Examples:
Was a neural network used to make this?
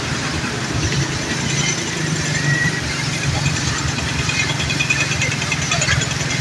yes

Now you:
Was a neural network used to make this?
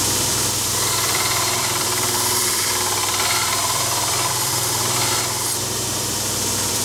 yes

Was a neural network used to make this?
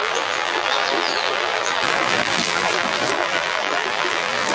yes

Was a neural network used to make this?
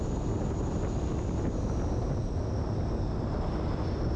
no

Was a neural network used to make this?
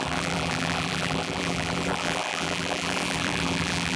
yes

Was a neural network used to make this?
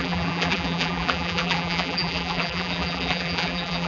yes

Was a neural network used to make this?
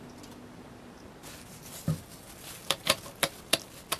yes